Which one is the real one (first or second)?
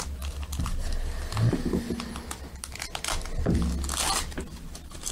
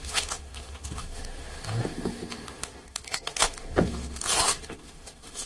first